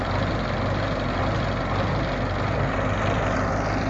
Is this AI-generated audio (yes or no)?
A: no